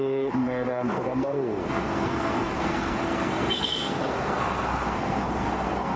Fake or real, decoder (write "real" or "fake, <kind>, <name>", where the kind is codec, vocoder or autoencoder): fake, codec, SNAC